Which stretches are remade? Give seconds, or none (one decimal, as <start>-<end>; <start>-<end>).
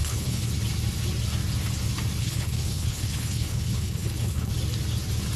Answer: 0.0-0.5; 2.2-4.5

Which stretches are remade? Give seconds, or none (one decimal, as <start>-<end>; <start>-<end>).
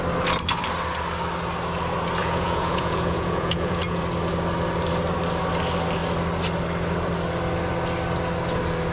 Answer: 2.2-4.0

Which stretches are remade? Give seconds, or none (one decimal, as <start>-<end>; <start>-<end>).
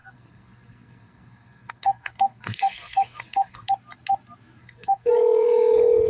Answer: 0.0-3.7; 4.6-6.1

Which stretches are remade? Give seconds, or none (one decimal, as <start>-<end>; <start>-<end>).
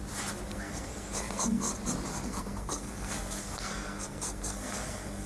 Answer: 0.5-1.7; 2.1-5.3